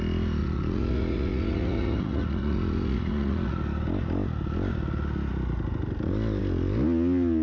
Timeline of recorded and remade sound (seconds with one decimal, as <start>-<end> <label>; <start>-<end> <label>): 0.0-0.4 recorded; 0.4-3.6 remade; 3.6-7.4 recorded